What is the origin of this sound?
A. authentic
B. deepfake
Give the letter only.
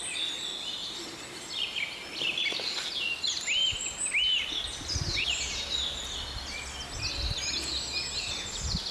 A